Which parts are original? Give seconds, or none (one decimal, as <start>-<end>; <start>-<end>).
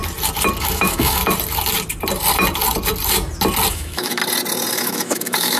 0.0-0.6; 1.2-3.7; 4.2-4.7